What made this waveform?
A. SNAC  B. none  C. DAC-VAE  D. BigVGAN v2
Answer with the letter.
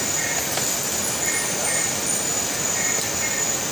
B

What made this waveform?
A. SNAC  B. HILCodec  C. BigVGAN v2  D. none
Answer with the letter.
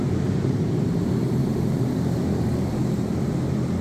C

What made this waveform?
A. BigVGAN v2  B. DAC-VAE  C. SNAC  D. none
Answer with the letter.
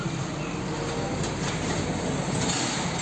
D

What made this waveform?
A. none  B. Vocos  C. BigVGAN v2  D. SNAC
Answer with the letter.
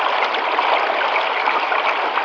A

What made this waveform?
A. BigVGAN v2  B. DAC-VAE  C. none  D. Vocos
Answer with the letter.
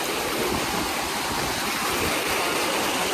C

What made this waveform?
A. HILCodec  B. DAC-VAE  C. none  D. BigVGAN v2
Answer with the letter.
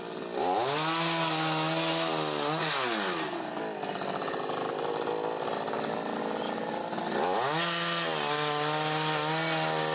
C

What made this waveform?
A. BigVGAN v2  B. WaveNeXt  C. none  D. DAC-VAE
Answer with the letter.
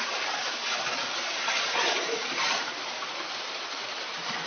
A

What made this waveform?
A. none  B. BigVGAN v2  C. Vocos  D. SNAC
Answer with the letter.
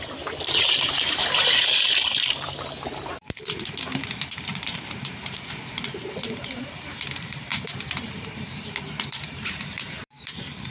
B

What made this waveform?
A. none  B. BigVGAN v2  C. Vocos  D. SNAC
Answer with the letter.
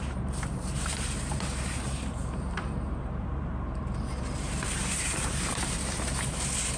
B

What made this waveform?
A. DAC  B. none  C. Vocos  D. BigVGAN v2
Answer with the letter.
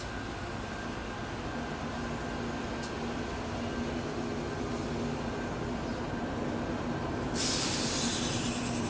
B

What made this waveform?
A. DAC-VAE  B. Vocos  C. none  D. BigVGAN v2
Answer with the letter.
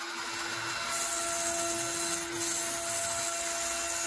C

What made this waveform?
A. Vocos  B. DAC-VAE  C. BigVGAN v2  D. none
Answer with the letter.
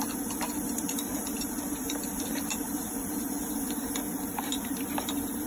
C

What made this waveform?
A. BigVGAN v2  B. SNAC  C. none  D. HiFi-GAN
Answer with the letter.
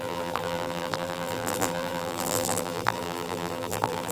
A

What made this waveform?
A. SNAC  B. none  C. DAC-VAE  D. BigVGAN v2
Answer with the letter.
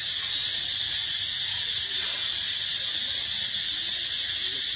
B